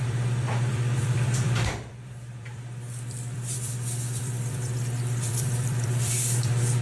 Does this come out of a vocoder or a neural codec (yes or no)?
yes